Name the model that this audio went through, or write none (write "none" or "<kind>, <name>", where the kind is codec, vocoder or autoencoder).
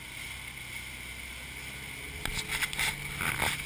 none